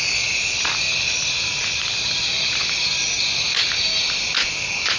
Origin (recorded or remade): recorded